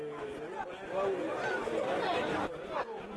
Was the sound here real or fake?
real